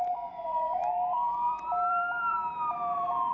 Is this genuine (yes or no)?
no